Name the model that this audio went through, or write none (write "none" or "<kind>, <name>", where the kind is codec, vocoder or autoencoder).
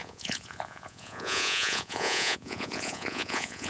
vocoder, Vocos